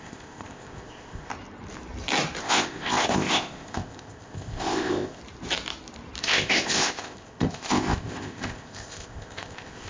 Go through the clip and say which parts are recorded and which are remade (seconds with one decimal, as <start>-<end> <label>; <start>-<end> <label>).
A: 0.0-1.3 remade; 1.3-2.4 recorded; 2.4-5.2 remade; 5.2-6.2 recorded; 6.2-9.9 remade